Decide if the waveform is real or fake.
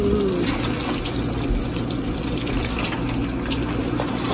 real